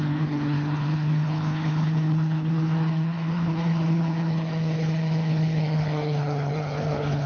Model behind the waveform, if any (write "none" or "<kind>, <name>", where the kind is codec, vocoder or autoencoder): codec, HILCodec